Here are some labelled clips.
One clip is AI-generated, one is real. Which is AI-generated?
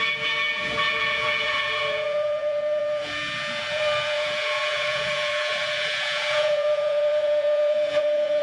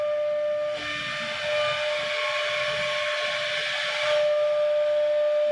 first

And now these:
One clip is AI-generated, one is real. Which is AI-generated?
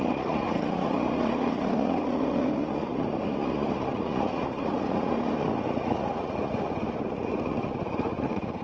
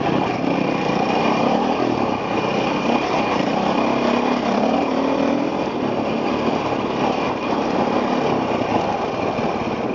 first